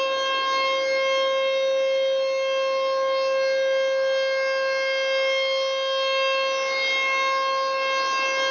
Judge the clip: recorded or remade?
recorded